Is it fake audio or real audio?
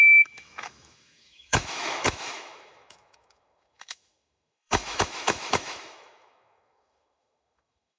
fake